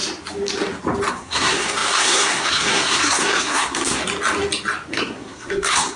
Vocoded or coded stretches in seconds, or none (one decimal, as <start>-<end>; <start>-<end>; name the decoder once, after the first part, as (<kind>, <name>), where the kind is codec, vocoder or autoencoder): 1.1-4.0 (codec, SNAC); 4.9-6.0